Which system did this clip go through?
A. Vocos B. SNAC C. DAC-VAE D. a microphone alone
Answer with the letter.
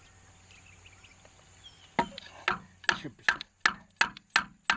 D